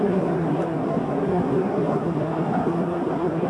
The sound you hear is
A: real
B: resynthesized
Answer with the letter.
B